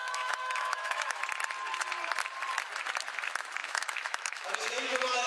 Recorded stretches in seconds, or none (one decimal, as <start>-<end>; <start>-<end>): 1.2-3.6